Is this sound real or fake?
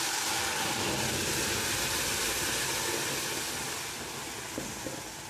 real